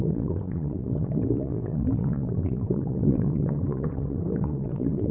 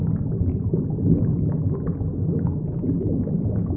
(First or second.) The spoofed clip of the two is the first